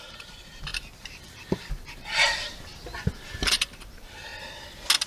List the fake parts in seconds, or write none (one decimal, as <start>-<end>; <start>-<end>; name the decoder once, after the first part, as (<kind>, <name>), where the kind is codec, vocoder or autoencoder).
0.0-2.7 (vocoder, BigVGAN v2); 3.3-4.3